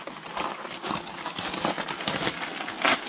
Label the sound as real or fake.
real